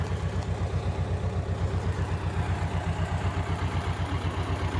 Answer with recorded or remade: recorded